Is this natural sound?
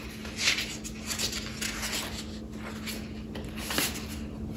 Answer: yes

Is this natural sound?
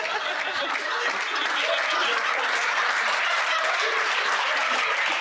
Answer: yes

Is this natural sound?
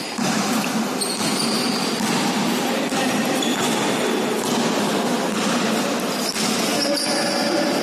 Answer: yes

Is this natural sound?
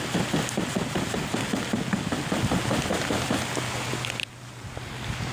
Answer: yes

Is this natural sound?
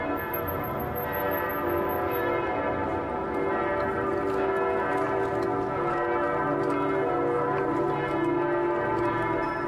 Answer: yes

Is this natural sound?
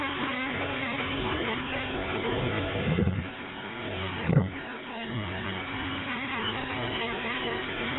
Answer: no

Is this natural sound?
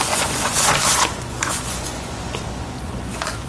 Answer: no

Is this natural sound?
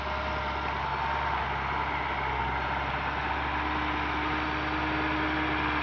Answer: yes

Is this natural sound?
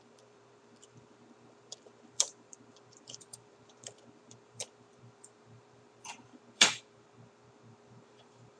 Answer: no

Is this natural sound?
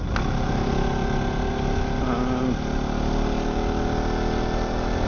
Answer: yes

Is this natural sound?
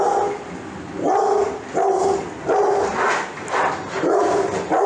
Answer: yes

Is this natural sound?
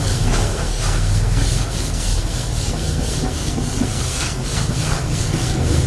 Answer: no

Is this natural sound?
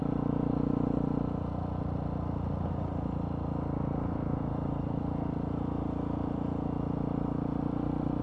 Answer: yes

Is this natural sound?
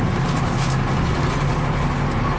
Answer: yes